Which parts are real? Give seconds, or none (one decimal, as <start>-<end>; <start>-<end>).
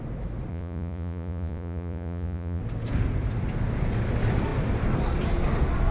0.0-0.5; 2.6-5.9